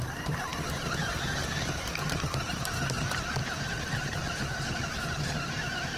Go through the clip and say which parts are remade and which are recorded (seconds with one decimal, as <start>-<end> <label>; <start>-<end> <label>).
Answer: 0.0-0.5 remade; 0.5-1.8 recorded; 1.8-6.0 remade

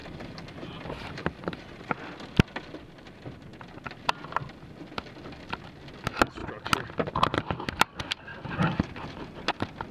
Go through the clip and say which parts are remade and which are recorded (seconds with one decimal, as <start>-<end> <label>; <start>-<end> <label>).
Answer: 0.0-1.9 remade; 1.9-9.9 recorded

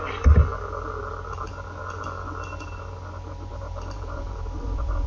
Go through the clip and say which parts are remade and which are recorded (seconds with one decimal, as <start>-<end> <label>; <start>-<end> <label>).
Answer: 0.0-3.5 recorded; 3.5-5.1 remade

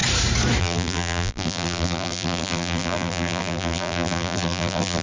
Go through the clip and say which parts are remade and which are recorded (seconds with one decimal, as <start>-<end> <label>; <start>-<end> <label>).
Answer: 0.0-0.6 recorded; 0.6-5.0 remade

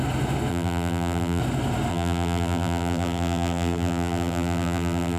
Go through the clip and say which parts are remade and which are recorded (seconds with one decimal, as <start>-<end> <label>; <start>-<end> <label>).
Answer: 0.0-0.5 recorded; 0.5-1.4 remade; 1.4-1.9 recorded; 1.9-5.2 remade

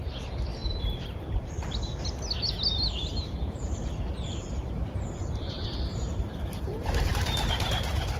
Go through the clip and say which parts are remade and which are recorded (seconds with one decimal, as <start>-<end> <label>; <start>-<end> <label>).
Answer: 0.0-0.6 recorded; 0.6-1.5 remade; 1.5-3.4 recorded; 3.4-7.7 remade; 7.7-8.2 recorded

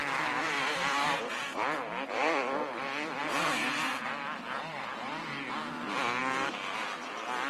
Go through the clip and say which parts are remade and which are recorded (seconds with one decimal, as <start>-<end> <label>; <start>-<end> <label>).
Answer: 0.0-5.1 remade; 5.1-5.7 recorded; 5.7-7.5 remade